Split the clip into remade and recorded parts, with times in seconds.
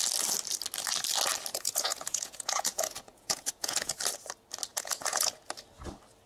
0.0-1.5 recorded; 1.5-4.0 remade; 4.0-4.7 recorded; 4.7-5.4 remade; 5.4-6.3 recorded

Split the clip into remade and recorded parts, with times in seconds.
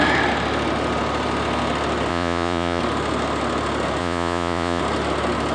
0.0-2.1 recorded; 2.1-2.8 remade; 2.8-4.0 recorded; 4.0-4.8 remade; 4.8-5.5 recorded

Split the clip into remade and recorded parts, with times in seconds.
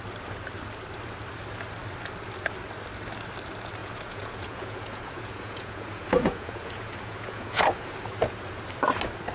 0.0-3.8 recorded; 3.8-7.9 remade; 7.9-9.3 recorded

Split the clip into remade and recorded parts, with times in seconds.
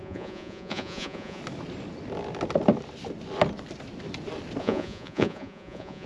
0.0-1.4 remade; 1.4-4.6 recorded; 4.6-6.1 remade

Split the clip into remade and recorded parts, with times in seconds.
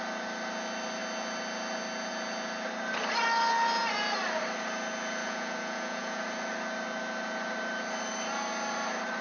0.0-5.2 recorded; 5.2-6.2 remade; 6.2-9.2 recorded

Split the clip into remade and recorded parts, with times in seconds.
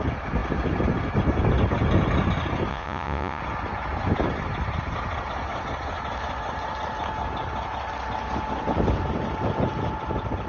0.0-2.7 recorded; 2.7-3.4 remade; 3.4-10.5 recorded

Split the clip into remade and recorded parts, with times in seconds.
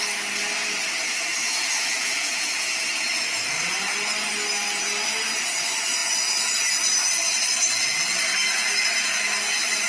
0.0-1.3 recorded; 1.3-2.8 remade; 2.8-6.0 recorded; 6.0-6.5 remade; 6.5-8.4 recorded; 8.4-9.1 remade; 9.1-9.9 recorded